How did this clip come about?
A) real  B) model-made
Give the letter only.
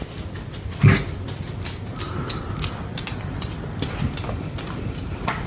A